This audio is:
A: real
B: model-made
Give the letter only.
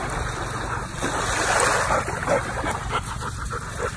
A